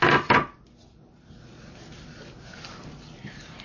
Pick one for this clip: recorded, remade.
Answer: recorded